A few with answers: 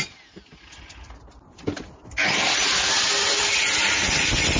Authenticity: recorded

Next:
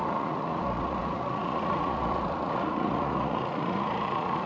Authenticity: remade